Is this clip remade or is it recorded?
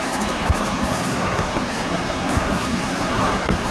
remade